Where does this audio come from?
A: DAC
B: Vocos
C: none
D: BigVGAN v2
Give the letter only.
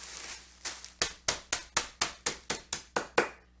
C